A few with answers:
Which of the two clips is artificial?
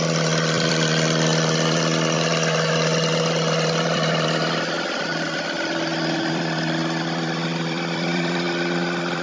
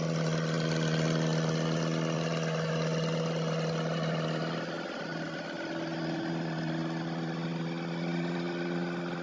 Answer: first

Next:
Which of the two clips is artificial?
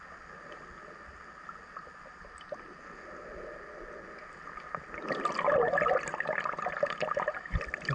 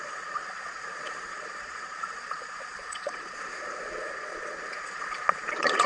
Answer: second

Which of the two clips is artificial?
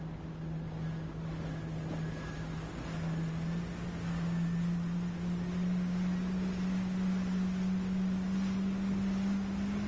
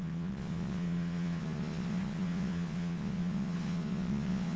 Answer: second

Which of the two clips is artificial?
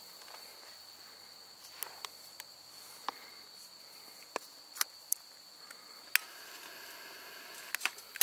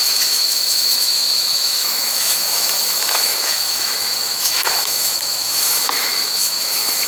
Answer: second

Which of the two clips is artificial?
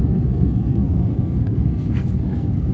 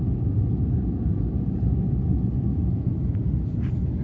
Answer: first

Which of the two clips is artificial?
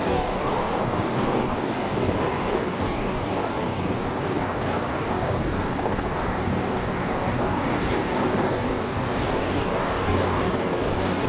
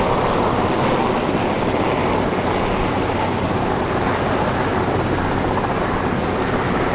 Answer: first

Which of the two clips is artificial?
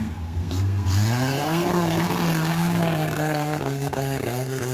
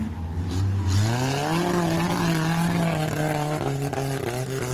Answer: first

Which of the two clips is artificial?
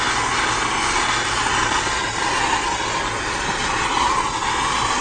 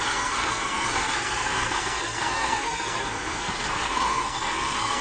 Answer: second